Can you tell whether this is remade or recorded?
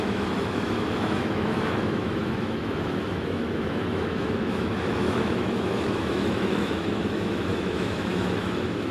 remade